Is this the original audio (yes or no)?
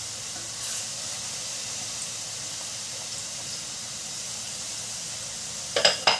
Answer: yes